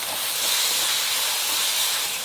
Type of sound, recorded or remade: recorded